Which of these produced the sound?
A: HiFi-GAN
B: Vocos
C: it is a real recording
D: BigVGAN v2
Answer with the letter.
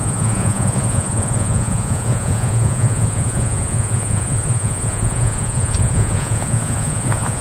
B